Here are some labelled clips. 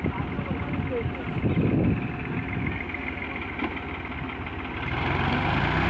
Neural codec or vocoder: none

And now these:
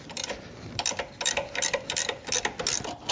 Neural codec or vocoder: none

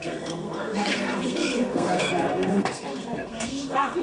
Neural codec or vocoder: codec, SNAC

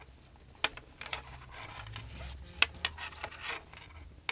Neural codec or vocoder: none